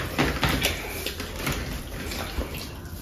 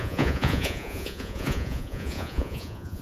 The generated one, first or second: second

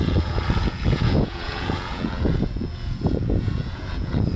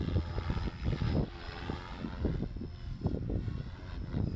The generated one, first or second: first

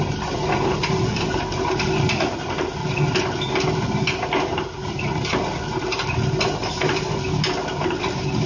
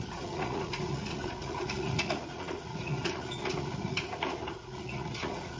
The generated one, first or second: second